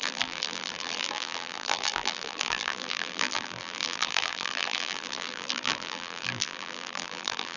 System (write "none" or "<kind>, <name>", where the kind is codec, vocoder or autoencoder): vocoder, BigVGAN v2